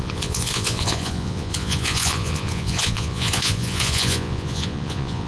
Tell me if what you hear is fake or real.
fake